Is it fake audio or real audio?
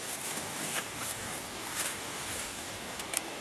fake